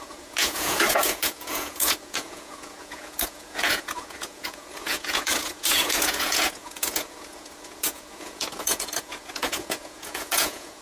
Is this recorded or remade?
remade